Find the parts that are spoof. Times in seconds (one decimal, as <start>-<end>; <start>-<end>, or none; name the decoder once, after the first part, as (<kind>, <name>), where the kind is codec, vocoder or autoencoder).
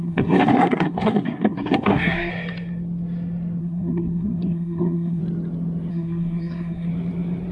0.0-2.3 (codec, SNAC); 3.6-5.2; 5.9-6.9